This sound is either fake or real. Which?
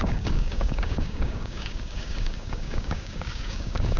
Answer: fake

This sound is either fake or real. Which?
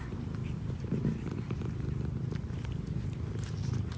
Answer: real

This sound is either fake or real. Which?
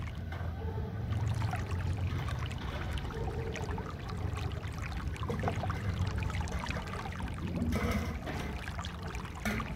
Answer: fake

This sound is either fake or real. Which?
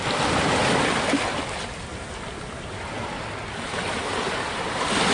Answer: real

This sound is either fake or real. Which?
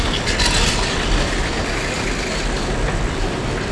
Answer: real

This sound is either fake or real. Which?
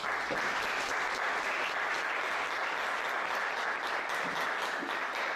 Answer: real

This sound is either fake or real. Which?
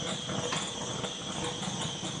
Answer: real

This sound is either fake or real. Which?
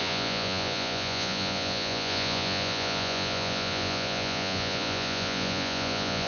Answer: fake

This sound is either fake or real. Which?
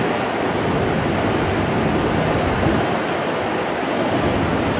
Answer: real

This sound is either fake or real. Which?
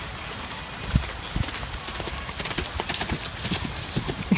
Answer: real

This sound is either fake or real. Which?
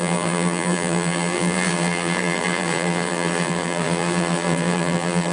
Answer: fake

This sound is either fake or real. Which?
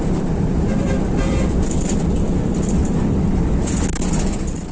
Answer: real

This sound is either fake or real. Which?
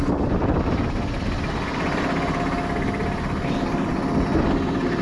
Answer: real